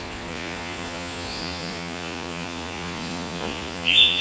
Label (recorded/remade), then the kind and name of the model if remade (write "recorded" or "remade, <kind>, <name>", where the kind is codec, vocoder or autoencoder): remade, vocoder, Vocos